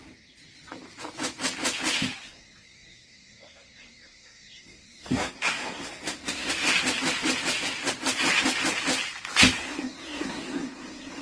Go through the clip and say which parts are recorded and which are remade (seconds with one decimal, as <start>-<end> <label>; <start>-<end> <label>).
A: 0.0-2.2 recorded; 2.2-6.5 remade; 6.5-9.6 recorded; 9.6-11.2 remade